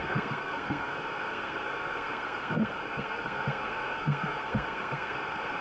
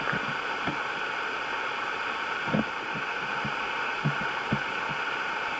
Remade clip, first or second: first